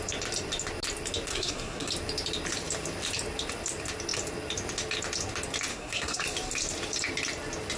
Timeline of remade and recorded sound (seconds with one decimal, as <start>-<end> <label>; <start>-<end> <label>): 0.0-1.3 recorded; 1.3-1.9 remade; 1.9-5.7 recorded; 5.7-6.2 remade; 6.2-7.8 recorded